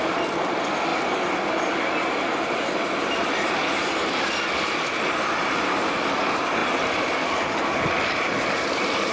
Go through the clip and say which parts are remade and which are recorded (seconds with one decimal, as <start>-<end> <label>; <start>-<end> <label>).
0.0-9.1 recorded